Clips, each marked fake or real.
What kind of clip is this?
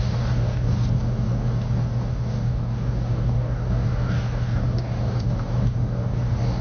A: fake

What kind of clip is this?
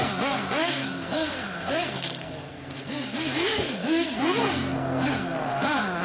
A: fake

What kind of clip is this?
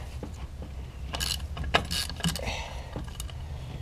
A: real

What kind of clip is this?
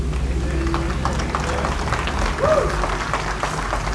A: real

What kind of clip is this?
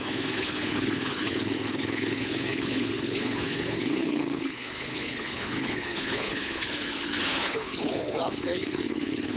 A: fake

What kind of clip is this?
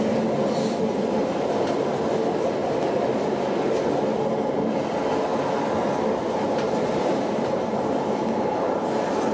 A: real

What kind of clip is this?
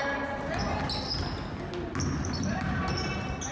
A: real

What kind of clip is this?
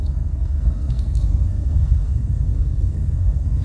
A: fake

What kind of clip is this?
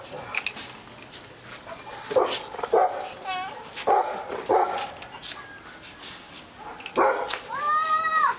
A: real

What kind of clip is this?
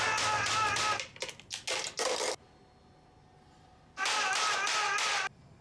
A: real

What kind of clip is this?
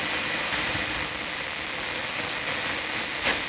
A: real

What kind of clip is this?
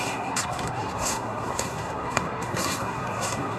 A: fake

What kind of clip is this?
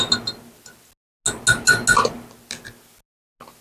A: real